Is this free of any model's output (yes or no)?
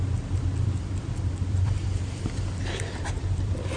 no